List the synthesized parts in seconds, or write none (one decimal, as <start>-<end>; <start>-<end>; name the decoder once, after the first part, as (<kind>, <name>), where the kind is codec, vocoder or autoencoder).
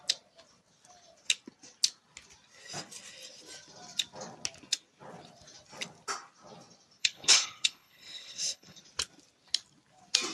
7.0-8.8 (codec, HILCodec)